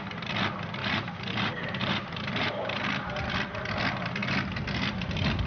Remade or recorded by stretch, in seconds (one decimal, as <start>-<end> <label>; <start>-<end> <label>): 0.0-0.8 recorded; 0.8-2.8 remade; 2.8-5.5 recorded